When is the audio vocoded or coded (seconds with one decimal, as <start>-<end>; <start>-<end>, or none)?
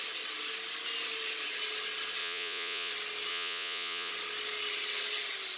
2.2-2.9; 3.3-4.1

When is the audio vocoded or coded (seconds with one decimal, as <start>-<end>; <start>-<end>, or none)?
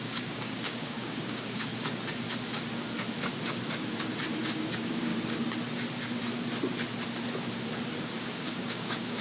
0.0-1.7; 4.4-5.1; 8.2-9.2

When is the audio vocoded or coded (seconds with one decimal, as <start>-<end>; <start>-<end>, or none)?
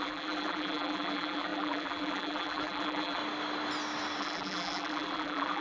0.0-3.2; 4.2-5.6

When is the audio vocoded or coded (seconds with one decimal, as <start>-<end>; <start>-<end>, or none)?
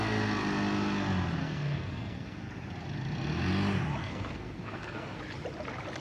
1.4-2.5; 4.0-5.2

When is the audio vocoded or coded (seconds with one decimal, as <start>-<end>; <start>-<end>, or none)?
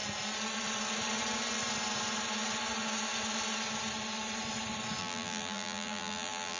5.0-6.6